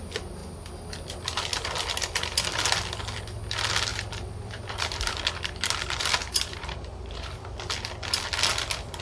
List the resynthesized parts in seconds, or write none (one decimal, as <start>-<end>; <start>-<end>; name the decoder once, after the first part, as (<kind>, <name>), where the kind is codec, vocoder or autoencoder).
3.9-5.2 (vocoder, BigVGAN v2); 6.2-7.4